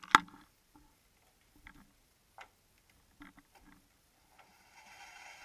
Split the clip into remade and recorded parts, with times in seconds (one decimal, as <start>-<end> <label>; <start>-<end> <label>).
0.0-5.4 recorded